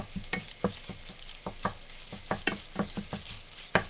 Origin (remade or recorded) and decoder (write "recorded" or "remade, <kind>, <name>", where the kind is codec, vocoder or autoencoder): recorded